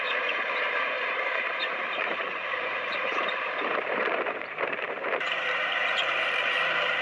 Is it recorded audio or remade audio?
remade